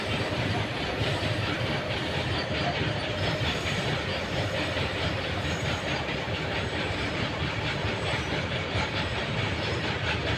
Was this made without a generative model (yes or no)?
no